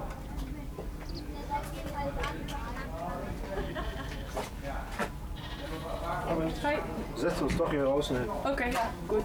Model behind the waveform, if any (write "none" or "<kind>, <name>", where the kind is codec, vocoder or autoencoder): none